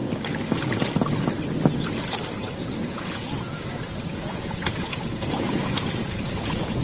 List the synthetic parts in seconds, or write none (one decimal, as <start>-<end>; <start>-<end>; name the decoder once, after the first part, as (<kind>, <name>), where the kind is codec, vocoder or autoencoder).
2.4-6.8 (vocoder, Vocos)